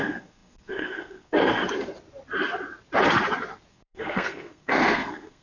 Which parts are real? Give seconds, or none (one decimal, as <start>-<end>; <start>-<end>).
1.6-3.7